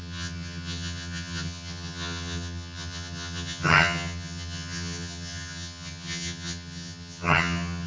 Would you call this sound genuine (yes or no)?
no